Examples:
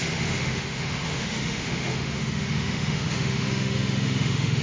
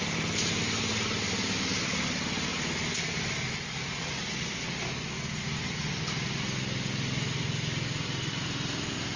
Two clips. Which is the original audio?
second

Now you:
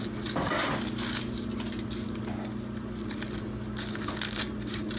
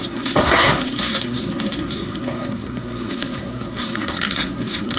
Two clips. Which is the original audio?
first